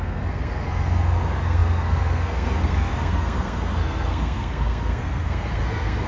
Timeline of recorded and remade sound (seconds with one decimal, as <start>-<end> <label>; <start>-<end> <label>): 0.0-6.1 remade

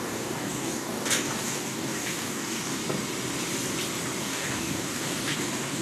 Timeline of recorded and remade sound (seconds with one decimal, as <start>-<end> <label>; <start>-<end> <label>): 0.0-2.8 remade; 2.8-4.2 recorded; 4.2-5.8 remade

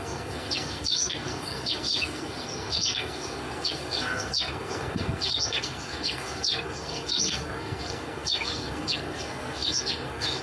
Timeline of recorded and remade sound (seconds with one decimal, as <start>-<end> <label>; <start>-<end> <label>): 0.0-10.4 remade